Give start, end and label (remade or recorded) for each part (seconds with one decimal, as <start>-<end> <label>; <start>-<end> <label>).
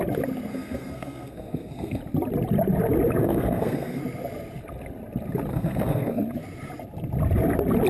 0.0-0.5 recorded; 0.5-2.0 remade; 2.0-3.2 recorded; 3.2-4.0 remade; 4.0-5.5 recorded; 5.5-6.2 remade; 6.2-7.9 recorded